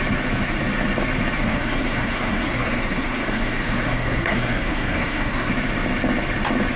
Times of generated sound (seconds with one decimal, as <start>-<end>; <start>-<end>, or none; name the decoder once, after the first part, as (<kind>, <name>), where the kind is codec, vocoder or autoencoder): 1.4-5.5 (codec, SNAC)